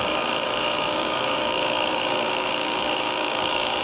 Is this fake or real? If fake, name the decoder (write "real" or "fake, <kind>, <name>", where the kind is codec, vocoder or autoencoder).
fake, codec, DAC